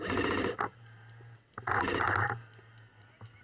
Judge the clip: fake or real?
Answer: real